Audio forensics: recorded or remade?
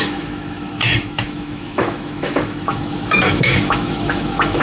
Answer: remade